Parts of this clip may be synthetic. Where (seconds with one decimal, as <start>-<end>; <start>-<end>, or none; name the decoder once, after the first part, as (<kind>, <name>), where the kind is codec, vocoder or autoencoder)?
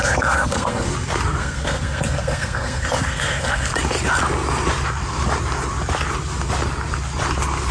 0.0-0.9 (codec, SNAC); 1.4-3.7